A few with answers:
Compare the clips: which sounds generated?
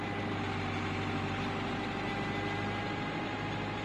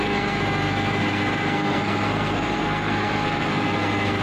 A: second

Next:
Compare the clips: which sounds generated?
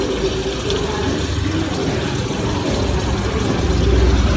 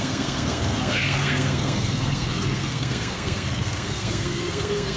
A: second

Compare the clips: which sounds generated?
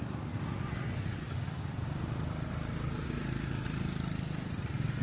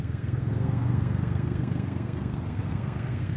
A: second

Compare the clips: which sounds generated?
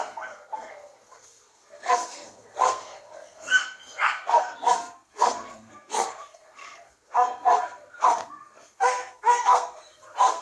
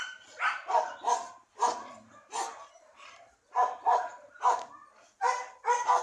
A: first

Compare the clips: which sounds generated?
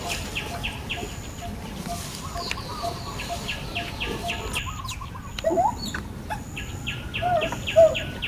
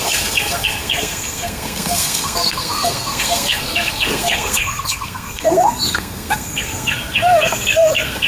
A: second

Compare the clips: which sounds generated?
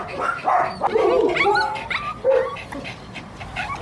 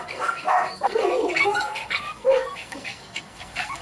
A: second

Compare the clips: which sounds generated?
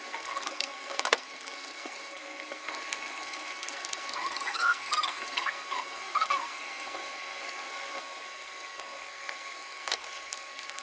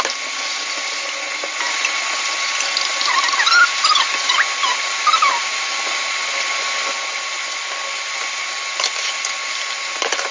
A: first